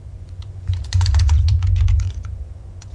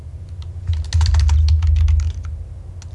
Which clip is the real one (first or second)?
second